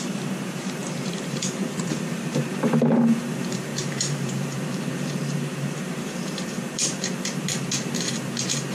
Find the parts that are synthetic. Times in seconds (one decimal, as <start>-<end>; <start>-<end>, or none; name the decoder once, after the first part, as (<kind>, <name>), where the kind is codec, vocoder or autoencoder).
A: 0.0-8.7 (vocoder, BigVGAN v2)